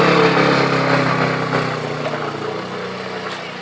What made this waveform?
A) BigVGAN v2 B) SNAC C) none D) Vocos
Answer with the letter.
C